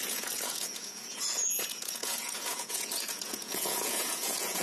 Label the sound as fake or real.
fake